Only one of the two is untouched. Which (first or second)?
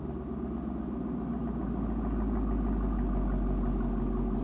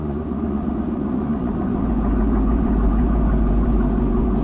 first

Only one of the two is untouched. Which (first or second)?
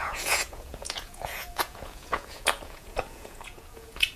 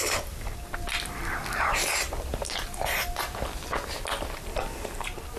second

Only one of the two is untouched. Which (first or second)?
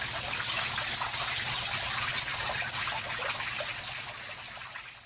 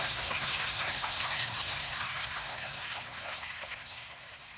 first